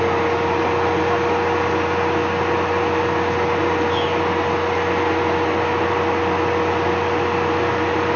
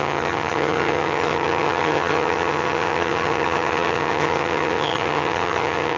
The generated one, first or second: second